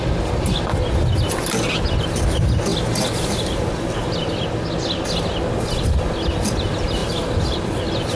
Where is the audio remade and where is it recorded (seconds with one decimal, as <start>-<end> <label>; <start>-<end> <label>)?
0.0-8.2 recorded